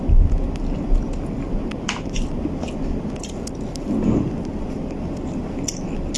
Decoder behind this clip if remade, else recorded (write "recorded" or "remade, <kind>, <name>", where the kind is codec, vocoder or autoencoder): recorded